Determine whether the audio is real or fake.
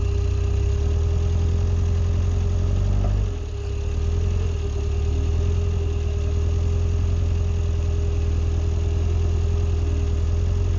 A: real